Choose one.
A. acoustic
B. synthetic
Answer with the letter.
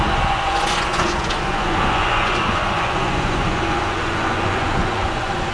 B